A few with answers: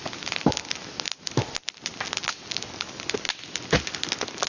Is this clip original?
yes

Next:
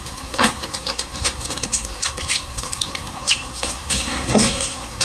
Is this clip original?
no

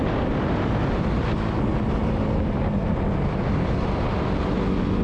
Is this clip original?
yes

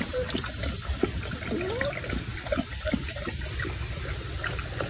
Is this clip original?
yes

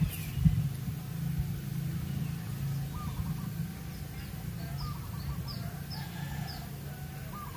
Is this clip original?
yes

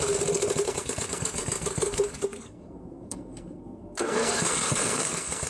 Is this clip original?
no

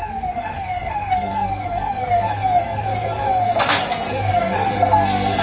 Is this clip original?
no